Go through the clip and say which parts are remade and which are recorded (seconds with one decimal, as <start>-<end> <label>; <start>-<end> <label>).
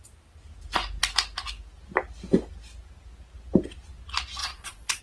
0.0-4.4 recorded; 4.4-5.0 remade